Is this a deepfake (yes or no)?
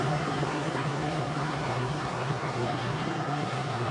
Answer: yes